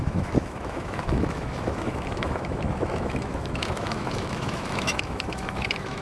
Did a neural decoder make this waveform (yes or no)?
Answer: yes